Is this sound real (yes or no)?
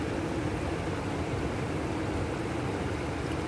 yes